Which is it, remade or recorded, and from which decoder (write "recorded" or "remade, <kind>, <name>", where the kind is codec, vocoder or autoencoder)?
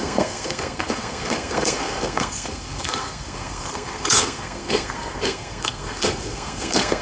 remade, codec, SNAC